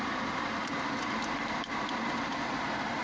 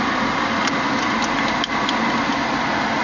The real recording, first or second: second